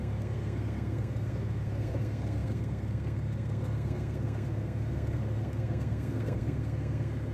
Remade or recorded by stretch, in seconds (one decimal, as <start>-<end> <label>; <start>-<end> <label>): 0.0-7.3 remade